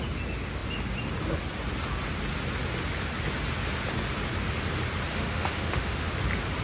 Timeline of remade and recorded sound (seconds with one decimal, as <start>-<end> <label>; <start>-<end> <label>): 0.0-5.1 recorded; 5.1-6.1 remade; 6.1-6.6 recorded